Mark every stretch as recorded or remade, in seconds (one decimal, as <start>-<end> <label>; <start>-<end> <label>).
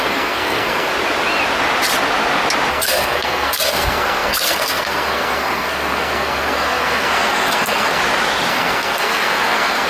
0.0-0.9 remade; 0.9-2.7 recorded; 2.7-8.0 remade; 8.0-8.5 recorded; 8.5-9.9 remade